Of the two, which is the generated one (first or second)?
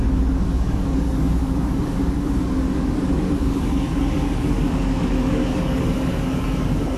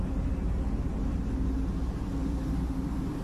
first